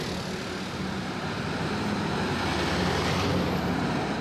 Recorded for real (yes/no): yes